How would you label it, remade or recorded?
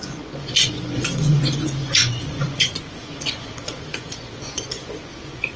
remade